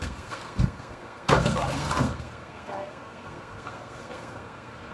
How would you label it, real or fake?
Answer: fake